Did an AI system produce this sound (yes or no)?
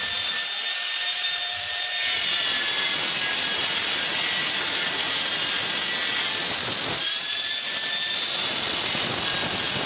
no